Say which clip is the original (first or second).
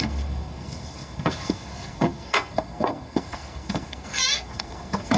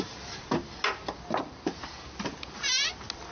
second